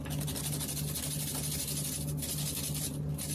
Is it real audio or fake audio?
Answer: real